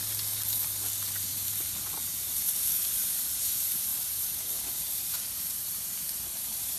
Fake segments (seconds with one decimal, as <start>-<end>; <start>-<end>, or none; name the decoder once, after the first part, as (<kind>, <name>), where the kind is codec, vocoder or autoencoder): 1.3-6.8 (vocoder, BigVGAN v2)